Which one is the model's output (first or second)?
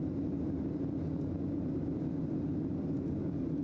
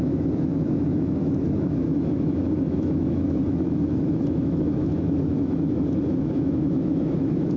second